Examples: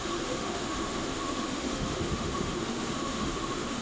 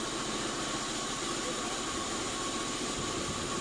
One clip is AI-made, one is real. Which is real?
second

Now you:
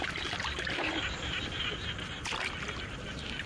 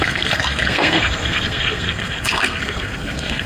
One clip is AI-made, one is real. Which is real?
first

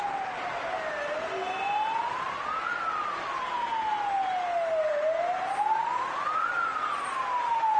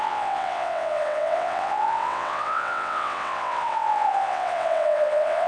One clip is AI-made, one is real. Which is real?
first